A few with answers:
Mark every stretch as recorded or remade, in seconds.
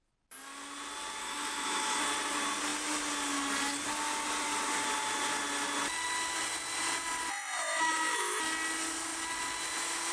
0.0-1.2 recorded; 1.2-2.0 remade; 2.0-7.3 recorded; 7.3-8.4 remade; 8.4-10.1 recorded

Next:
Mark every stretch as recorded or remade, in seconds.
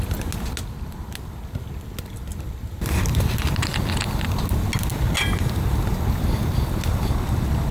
0.0-7.7 recorded